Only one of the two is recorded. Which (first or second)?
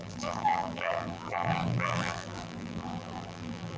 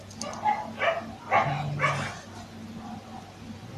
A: second